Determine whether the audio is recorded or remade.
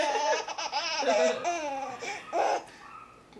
recorded